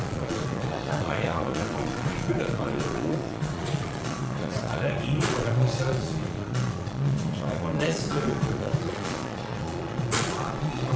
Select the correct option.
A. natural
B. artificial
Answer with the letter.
B